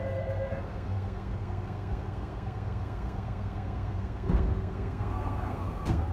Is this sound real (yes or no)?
no